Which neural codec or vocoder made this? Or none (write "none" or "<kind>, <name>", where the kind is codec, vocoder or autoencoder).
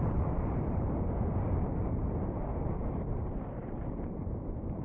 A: vocoder, BigVGAN v2